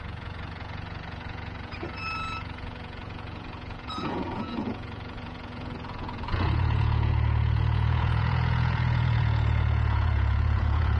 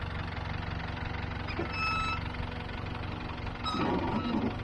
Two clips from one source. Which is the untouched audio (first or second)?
second